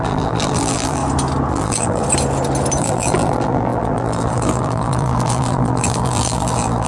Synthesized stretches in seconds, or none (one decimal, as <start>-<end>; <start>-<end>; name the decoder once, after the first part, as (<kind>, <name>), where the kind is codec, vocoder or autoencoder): 0.0-1.0 (vocoder, BigVGAN v2); 1.5-2.0; 2.8-6.9